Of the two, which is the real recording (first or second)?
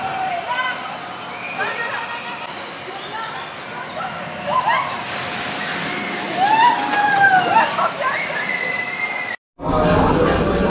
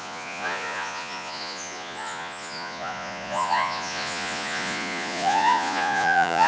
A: first